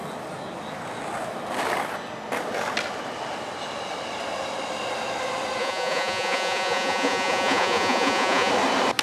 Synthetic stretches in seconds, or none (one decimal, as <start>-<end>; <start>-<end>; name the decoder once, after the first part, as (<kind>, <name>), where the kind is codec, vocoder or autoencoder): 5.6-8.5 (vocoder, Vocos)